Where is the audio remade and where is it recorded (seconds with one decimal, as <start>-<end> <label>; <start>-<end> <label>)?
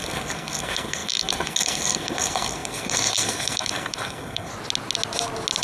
0.0-4.5 remade; 4.5-5.6 recorded